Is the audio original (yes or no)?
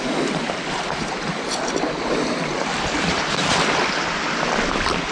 yes